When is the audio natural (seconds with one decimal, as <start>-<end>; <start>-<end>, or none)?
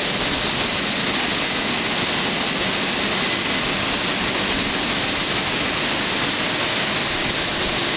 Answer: 0.0-8.0